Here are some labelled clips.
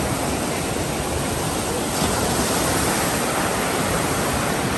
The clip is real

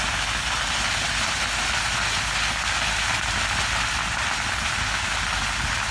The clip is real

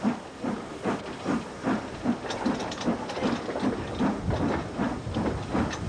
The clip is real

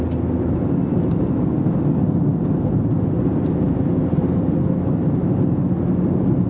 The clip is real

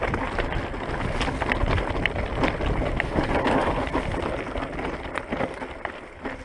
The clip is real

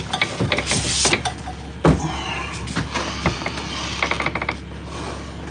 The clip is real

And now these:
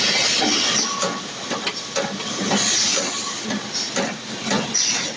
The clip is real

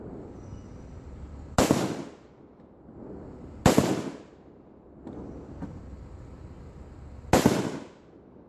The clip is real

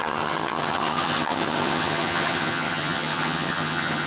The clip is fake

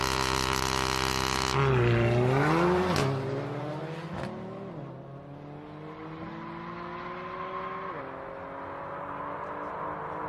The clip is real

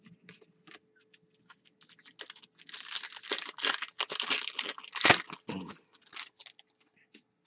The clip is real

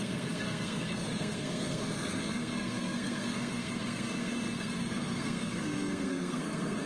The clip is fake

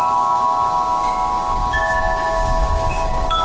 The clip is fake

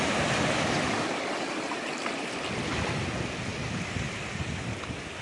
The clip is real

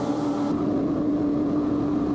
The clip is real